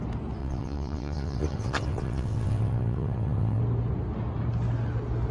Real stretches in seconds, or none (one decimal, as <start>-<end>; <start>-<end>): 0.0-0.4; 3.6-5.3